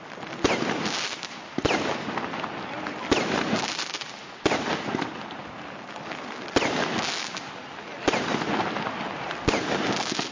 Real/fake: real